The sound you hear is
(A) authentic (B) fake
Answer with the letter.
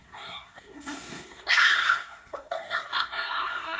B